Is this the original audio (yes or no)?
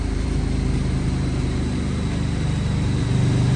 no